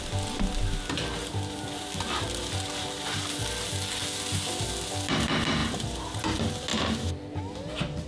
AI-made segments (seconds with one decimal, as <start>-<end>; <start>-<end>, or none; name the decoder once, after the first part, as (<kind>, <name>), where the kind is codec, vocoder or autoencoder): 1.2-3.2 (vocoder, BigVGAN v2); 5.6-6.2; 6.7-8.1